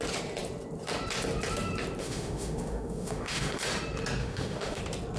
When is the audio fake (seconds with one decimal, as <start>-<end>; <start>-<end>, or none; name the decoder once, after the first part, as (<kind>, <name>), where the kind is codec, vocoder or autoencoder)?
2.0-3.6 (autoencoder, DAC-VAE); 4.2-4.8